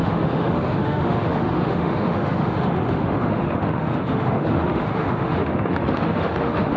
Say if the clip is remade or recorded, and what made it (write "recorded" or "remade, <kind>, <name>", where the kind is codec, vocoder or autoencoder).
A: remade, autoencoder, DAC-VAE